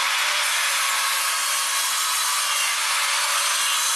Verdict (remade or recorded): remade